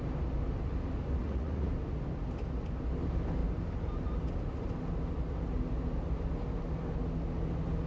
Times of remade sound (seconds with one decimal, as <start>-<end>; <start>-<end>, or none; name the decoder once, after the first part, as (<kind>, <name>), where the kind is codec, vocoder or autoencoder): 1.2-1.7 (vocoder, Vocos)